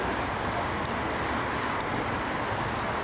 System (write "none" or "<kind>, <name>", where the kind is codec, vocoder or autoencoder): none